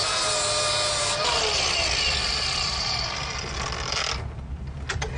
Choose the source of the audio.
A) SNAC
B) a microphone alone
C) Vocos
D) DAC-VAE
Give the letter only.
B